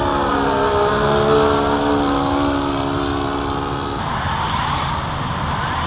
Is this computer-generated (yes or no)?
no